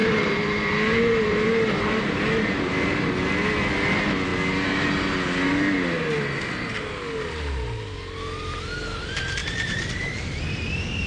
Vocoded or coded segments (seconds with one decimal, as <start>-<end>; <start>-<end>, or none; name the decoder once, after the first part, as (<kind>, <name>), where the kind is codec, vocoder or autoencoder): 0.0-2.2 (vocoder, BigVGAN v2); 9.4-10.3